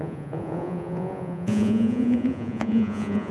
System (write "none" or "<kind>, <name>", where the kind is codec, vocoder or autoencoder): vocoder, Vocos